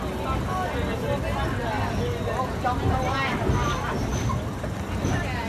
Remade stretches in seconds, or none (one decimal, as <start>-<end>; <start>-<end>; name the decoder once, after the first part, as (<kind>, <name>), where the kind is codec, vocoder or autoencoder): 3.3-4.1 (vocoder, BigVGAN v2)